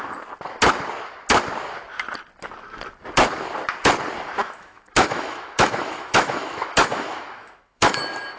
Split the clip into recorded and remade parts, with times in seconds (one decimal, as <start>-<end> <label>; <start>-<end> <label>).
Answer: 0.0-4.4 recorded; 4.4-8.0 remade; 8.0-8.4 recorded